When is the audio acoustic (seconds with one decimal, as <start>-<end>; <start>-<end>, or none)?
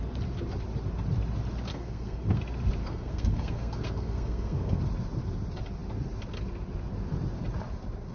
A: 0.0-1.7; 2.4-2.8; 4.8-8.1